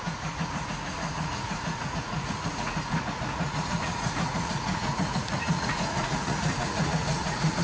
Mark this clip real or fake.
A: fake